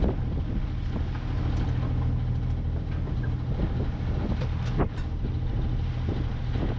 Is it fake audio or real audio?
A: real